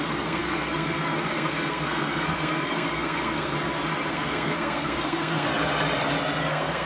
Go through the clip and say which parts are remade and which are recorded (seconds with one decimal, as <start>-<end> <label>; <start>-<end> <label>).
0.0-3.5 remade; 3.5-4.1 recorded; 4.1-5.5 remade; 5.5-6.5 recorded; 6.5-6.9 remade